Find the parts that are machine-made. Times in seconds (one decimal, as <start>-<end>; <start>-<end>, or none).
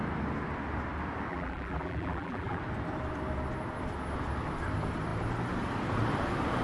1.3-2.6